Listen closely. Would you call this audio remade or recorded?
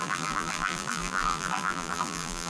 remade